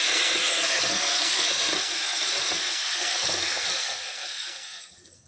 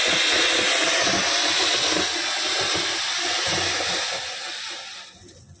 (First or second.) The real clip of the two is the second